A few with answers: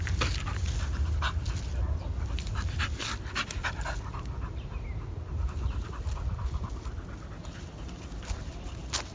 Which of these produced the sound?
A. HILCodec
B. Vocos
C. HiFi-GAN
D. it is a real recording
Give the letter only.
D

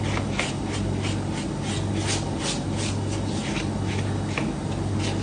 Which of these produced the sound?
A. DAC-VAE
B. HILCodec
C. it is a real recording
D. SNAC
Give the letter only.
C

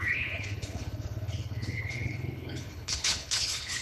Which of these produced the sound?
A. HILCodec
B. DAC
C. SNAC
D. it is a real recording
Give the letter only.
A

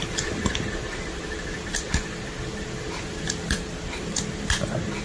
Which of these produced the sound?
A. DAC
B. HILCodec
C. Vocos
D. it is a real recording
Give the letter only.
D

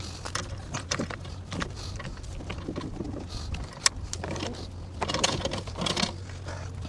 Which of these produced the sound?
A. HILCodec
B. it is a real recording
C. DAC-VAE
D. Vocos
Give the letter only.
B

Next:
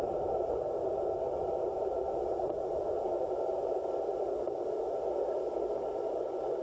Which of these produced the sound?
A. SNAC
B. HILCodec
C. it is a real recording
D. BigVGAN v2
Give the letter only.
C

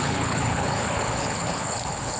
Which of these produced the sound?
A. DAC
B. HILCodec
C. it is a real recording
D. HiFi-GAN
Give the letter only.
B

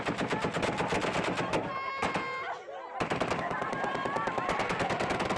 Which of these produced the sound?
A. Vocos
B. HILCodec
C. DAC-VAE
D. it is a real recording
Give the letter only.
D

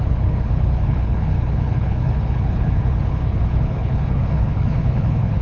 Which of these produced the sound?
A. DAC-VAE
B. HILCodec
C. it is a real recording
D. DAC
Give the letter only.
B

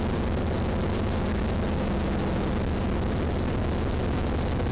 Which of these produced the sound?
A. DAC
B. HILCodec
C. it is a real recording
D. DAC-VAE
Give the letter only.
C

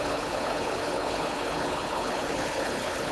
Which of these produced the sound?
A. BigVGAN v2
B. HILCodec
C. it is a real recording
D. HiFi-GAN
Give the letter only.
B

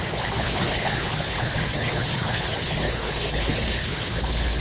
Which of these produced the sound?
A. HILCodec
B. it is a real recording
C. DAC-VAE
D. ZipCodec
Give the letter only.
A